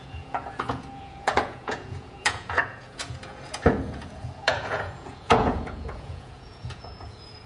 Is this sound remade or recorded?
remade